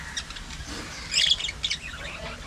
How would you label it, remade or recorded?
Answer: recorded